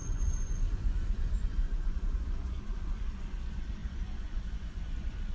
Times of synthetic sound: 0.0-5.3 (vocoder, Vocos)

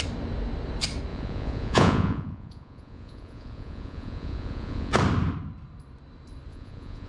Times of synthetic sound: 1.1-4.9 (vocoder, Vocos); 6.5-7.1

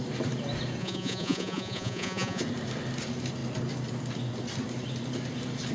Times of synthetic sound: 0.8-2.4 (vocoder, Vocos)

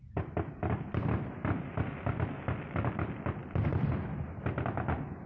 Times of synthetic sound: none

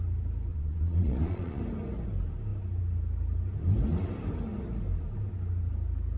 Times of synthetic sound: 0.5-1.6 (vocoder, Vocos)